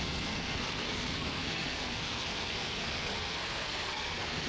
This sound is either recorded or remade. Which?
remade